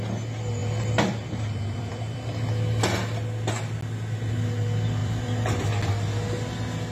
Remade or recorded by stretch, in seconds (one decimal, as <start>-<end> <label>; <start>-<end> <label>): 0.0-0.6 recorded; 0.6-2.5 remade; 2.5-5.0 recorded; 5.0-5.6 remade; 5.6-6.9 recorded